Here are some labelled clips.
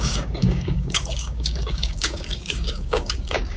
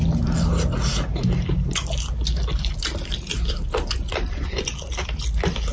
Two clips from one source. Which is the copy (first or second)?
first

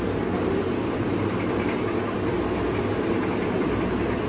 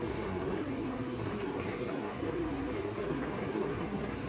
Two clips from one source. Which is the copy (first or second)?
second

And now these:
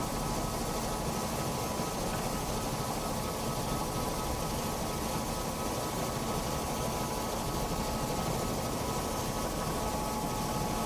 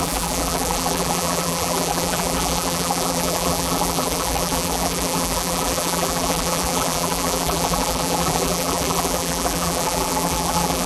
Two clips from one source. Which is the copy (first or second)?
second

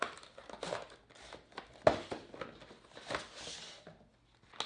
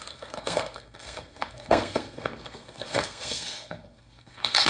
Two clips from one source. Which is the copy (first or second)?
second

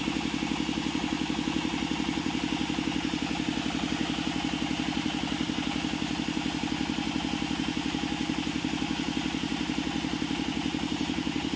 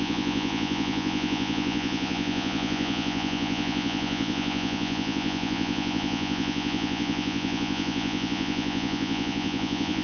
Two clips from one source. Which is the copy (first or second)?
second